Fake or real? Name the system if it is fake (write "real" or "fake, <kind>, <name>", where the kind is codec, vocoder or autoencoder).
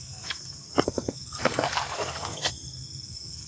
fake, codec, SNAC